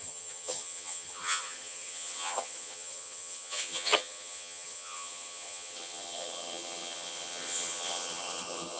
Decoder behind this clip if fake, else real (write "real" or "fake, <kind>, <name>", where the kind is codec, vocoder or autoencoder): fake, vocoder, HiFi-GAN